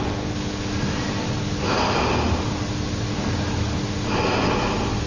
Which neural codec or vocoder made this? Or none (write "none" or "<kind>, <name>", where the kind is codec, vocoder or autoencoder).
none